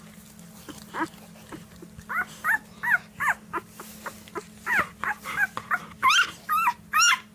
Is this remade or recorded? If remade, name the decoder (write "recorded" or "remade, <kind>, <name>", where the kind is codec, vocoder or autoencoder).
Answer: recorded